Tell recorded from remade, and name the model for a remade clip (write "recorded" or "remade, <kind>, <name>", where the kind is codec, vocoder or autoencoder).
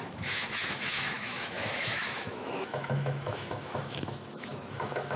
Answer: remade, autoencoder, DAC-VAE